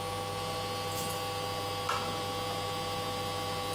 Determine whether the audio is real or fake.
real